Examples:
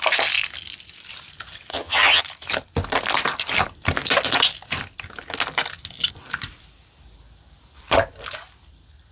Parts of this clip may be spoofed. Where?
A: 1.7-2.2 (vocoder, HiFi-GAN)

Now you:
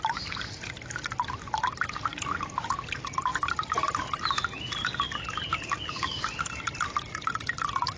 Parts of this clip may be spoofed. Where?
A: none

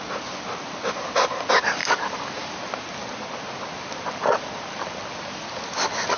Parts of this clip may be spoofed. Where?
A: none

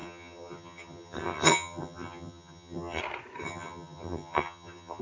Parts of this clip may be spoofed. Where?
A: 0.0-3.0 (vocoder, HiFi-GAN); 3.4-5.0

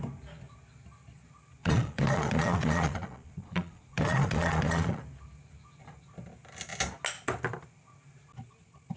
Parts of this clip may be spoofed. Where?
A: 1.6-5.0 (vocoder, Vocos)

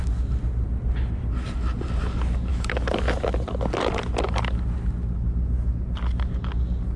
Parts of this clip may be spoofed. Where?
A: 2.5-3.0 (autoencoder, DAC-VAE)

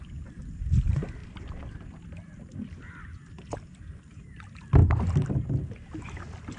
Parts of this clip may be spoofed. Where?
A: none

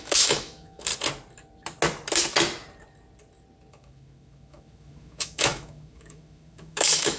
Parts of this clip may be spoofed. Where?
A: 0.0-0.9 (autoencoder, DAC-VAE); 3.7-7.2